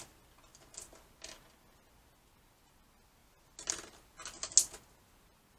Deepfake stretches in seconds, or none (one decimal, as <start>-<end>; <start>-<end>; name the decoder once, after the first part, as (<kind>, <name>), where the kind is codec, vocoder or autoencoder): none